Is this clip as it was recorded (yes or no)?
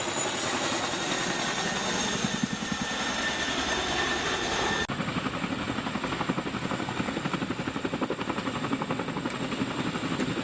yes